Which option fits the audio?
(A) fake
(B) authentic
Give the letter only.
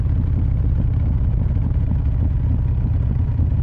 B